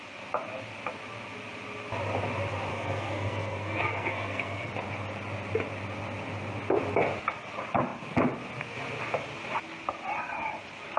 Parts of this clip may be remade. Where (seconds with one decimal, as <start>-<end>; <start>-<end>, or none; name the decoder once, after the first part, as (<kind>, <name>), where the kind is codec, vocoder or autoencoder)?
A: 2.7-4.7 (codec, SNAC)